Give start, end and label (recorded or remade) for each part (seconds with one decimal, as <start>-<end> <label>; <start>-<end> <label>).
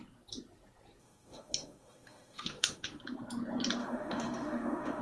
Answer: 0.0-1.0 recorded; 1.0-3.0 remade; 3.0-3.8 recorded; 3.8-5.0 remade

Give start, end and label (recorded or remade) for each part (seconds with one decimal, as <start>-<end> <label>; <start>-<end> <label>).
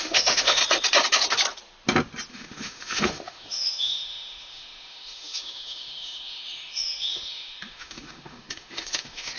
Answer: 0.0-0.6 remade; 0.6-2.3 recorded; 2.3-9.4 remade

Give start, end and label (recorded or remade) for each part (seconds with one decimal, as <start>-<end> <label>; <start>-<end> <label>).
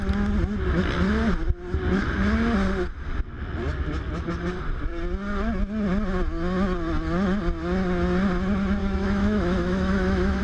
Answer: 0.0-8.8 recorded; 8.8-10.4 remade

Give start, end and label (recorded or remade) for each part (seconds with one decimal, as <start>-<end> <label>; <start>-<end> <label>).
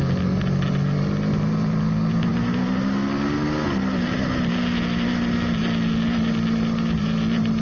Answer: 0.0-7.6 recorded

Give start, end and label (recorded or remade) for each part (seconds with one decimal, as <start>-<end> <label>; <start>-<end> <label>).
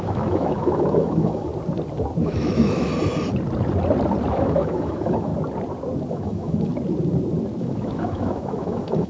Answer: 0.0-1.5 remade; 1.5-2.2 recorded; 2.2-2.9 remade; 2.9-4.3 recorded; 4.3-5.3 remade; 5.3-6.1 recorded; 6.1-6.7 remade; 6.7-7.6 recorded; 7.6-9.1 remade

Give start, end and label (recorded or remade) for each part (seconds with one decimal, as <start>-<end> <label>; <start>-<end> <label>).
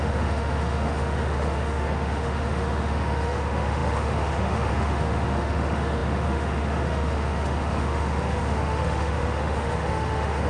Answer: 0.0-10.5 remade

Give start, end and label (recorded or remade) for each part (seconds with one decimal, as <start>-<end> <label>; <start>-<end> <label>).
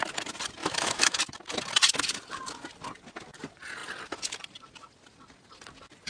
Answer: 0.0-0.6 recorded; 0.6-1.2 remade; 1.2-6.1 recorded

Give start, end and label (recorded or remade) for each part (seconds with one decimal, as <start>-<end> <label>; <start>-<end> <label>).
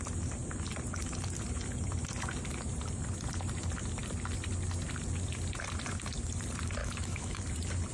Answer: 0.0-6.8 recorded; 6.8-7.4 remade; 7.4-7.9 recorded